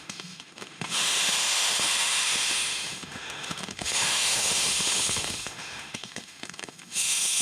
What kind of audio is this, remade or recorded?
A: remade